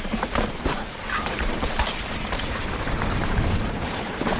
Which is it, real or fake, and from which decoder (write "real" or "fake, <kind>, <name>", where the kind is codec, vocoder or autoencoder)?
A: fake, vocoder, BigVGAN v2